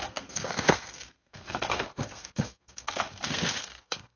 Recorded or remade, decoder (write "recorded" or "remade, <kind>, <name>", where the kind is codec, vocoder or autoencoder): remade, codec, SNAC